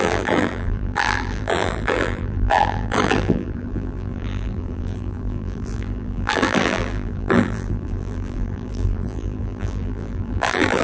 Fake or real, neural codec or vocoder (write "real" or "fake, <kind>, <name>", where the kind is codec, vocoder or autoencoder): fake, vocoder, BigVGAN v2